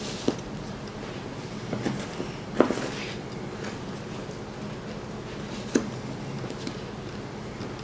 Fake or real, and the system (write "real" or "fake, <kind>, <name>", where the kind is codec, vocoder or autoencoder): real